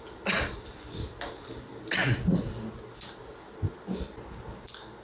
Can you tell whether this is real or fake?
real